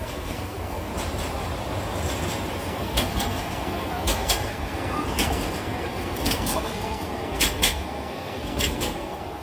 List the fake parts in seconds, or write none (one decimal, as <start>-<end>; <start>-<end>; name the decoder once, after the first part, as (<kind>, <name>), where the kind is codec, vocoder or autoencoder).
0.0-0.9 (codec, SNAC); 2.6-9.4